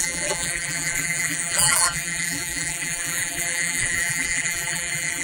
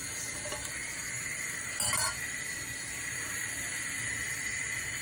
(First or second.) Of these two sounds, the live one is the second